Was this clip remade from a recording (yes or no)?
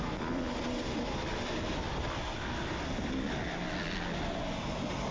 no